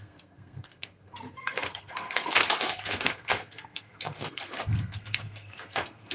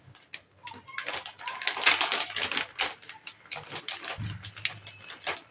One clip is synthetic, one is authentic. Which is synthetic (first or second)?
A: first